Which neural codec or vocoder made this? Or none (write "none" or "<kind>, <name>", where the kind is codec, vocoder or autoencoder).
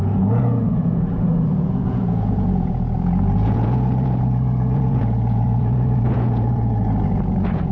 vocoder, Vocos